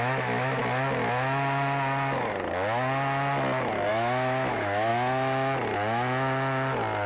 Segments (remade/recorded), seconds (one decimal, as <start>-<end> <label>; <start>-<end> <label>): 0.0-0.6 remade; 0.6-3.9 recorded; 3.9-4.9 remade; 4.9-7.1 recorded